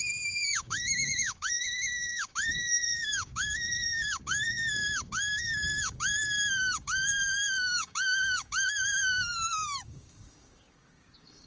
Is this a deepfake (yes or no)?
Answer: yes